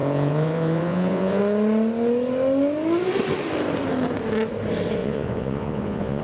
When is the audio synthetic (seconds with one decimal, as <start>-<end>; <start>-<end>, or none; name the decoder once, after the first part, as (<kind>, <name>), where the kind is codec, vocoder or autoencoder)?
0.0-1.4 (vocoder, Vocos); 5.0-6.2